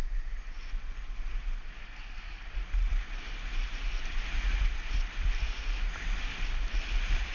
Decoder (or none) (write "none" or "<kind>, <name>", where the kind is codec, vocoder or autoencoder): none